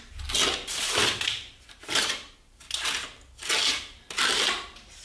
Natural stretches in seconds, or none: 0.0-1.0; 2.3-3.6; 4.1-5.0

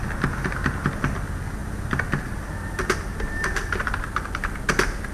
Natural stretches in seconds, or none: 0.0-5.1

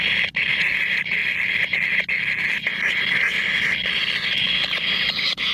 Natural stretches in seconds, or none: 0.0-5.5